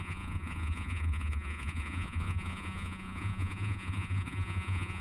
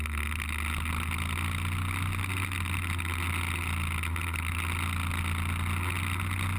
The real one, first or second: second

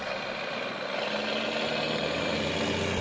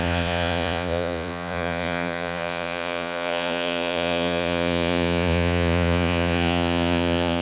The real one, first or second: first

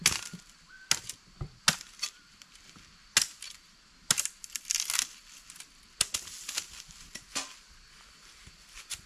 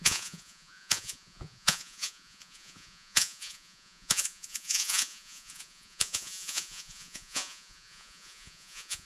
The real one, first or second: first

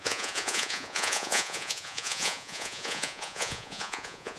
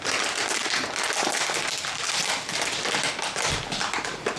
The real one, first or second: second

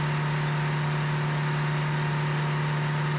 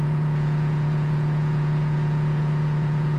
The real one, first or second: first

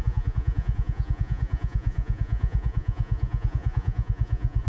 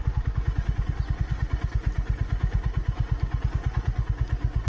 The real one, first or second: second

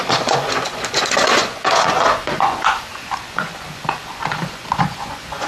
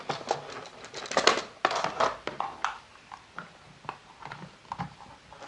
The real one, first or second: second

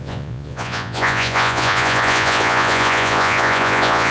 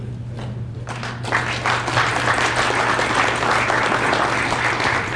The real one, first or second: second